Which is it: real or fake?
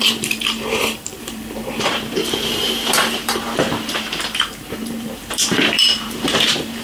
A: fake